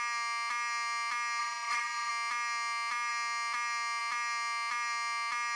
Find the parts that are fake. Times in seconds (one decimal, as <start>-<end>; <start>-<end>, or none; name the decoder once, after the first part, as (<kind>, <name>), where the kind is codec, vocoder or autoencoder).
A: 1.4-2.1 (vocoder, WaveNeXt)